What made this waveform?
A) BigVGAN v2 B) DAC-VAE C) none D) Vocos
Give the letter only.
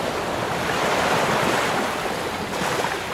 C